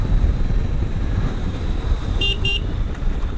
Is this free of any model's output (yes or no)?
no